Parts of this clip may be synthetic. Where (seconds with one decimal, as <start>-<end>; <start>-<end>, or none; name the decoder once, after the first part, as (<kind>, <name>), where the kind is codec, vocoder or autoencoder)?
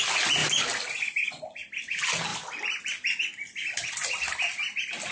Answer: none